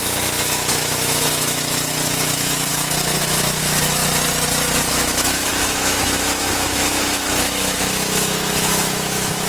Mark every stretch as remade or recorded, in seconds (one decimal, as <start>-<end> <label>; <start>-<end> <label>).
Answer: 0.0-4.0 remade; 4.0-4.9 recorded; 4.9-9.5 remade